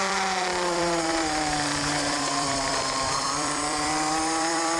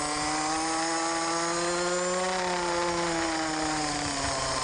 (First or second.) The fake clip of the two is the first